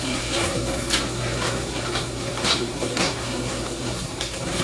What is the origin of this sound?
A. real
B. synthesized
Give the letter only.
B